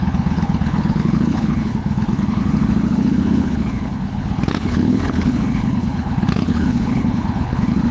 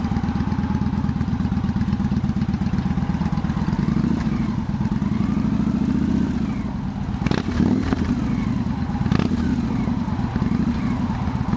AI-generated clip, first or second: first